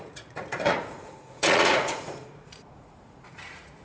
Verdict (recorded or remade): remade